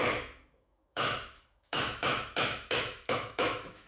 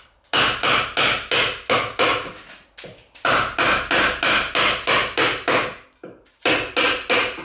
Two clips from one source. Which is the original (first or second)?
second